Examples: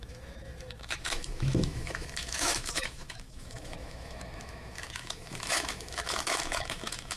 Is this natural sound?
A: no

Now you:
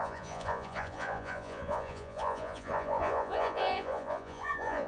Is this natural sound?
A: no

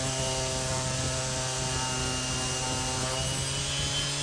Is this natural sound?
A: yes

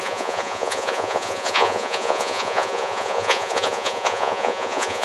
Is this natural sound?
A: no